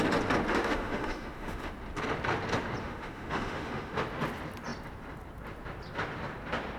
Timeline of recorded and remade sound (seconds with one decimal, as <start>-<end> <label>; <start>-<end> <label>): 0.0-0.5 recorded; 0.5-1.7 remade; 1.7-2.8 recorded; 2.8-4.0 remade; 4.0-6.8 recorded